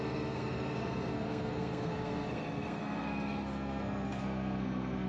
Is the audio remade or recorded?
remade